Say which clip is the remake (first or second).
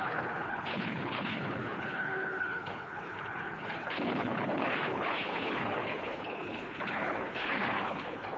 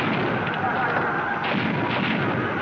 first